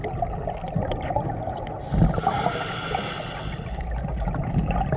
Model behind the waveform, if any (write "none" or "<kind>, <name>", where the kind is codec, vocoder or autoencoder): none